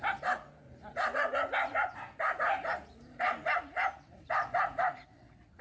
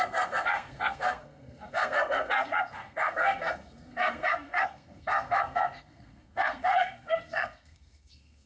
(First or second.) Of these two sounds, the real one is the first